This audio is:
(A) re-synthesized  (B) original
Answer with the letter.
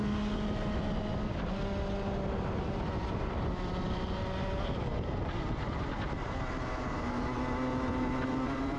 B